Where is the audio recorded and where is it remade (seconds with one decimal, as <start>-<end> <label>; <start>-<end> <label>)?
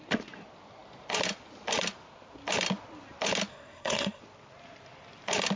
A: 0.0-3.5 recorded; 3.5-4.2 remade; 4.2-5.6 recorded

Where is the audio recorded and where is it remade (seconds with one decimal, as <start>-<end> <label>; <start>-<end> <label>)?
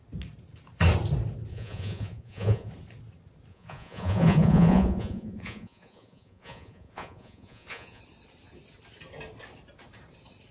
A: 0.0-1.5 recorded; 1.5-2.7 remade; 2.7-3.5 recorded; 3.5-8.0 remade; 8.0-10.5 recorded